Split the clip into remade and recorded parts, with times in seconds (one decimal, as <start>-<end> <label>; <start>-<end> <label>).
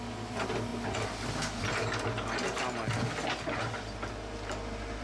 0.0-5.0 recorded